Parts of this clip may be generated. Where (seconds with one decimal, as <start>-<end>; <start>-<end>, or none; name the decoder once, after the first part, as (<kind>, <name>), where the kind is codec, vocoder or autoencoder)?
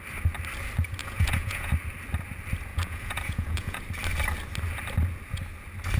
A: 1.0-1.7 (vocoder, Vocos); 2.7-3.8